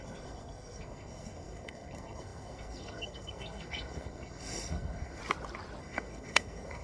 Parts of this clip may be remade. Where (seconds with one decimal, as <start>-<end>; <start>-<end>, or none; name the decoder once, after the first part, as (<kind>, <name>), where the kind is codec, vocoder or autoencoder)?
0.0-5.2 (codec, SNAC); 5.8-6.8